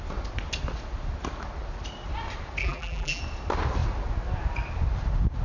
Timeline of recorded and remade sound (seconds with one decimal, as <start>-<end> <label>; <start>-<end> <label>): 0.0-2.6 recorded; 2.6-3.2 remade; 3.2-5.4 recorded